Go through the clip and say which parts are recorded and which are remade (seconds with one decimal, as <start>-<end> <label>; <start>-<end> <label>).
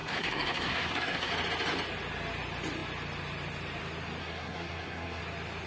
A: 0.0-1.3 remade; 1.3-4.2 recorded; 4.2-5.2 remade; 5.2-5.7 recorded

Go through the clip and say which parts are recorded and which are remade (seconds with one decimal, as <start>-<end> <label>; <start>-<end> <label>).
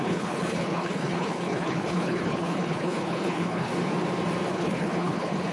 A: 0.0-3.7 remade; 3.7-4.5 recorded; 4.5-5.5 remade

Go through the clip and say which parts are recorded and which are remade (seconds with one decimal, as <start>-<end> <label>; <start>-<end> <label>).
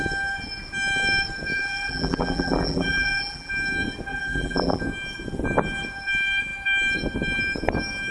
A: 0.0-1.5 recorded; 1.5-3.5 remade; 3.5-4.1 recorded; 4.1-4.8 remade; 4.8-8.1 recorded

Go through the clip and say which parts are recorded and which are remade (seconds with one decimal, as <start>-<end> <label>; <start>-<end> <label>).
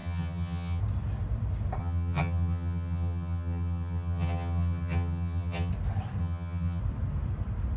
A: 0.0-0.8 remade; 0.8-1.8 recorded; 1.8-5.7 remade; 5.7-6.2 recorded; 6.2-6.8 remade; 6.8-7.8 recorded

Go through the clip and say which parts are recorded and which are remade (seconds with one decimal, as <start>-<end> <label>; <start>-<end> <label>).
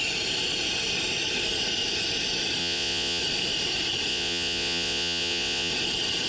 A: 0.0-2.6 recorded; 2.6-3.2 remade; 3.2-4.1 recorded; 4.1-5.7 remade; 5.7-6.3 recorded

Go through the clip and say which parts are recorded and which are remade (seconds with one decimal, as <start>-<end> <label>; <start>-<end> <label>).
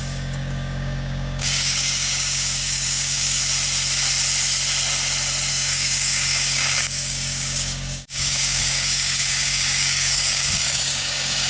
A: 0.0-3.4 remade; 3.4-5.5 recorded; 5.5-11.5 remade